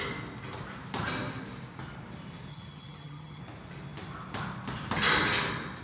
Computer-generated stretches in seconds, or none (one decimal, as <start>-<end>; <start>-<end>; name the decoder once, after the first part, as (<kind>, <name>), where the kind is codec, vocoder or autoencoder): 2.5-3.4 (vocoder, HiFi-GAN)

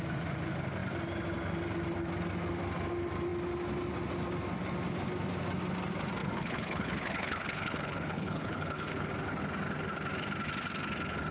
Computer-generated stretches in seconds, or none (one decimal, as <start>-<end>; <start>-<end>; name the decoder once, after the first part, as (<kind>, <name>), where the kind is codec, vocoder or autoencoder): 6.2-9.1 (codec, HILCodec)

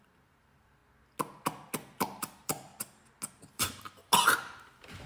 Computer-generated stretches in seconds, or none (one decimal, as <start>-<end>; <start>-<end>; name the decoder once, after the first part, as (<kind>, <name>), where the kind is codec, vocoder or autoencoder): 0.0-0.8 (vocoder, BigVGAN v2); 2.2-2.7; 3.3-4.0; 4.6-5.1

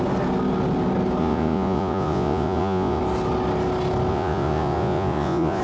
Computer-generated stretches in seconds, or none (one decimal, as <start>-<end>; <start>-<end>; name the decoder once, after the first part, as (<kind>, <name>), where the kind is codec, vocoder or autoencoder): 1.2-3.0 (vocoder, Vocos); 4.1-5.6

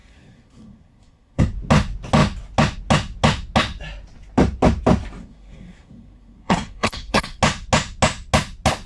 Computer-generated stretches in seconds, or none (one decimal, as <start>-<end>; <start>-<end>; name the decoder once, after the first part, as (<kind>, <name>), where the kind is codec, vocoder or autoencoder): 0.0-1.4 (codec, SNAC); 5.2-7.4

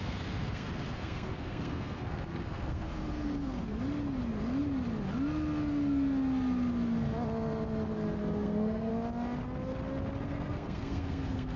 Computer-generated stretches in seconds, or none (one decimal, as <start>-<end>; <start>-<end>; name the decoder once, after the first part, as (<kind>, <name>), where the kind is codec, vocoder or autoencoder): 0.0-3.7 (codec, SNAC); 8.2-8.9; 10.2-11.6

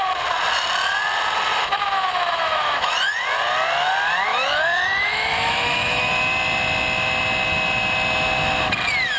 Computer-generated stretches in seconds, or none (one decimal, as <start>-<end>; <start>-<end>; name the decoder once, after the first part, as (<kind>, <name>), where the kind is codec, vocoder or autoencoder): 1.6-2.9 (autoencoder, DAC-VAE); 4.3-6.1